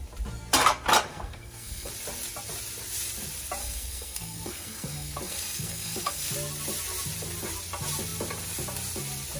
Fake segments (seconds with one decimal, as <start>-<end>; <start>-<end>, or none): 1.1-1.9; 3.6-6.3